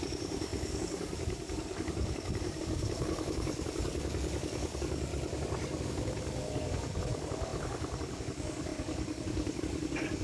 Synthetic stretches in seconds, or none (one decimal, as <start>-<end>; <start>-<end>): 0.0-5.1; 5.8-10.2